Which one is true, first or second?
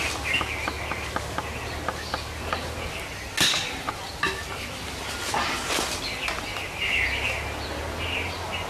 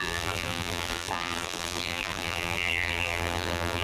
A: first